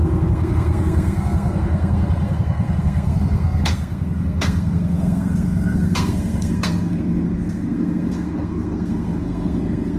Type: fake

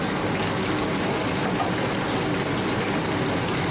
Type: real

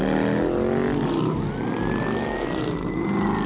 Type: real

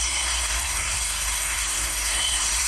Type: fake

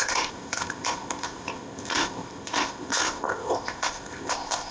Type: fake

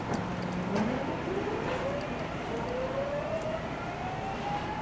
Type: real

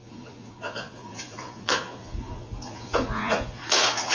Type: fake